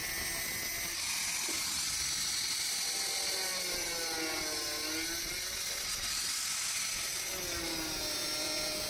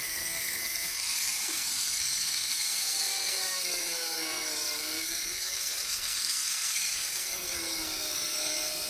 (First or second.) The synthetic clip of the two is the second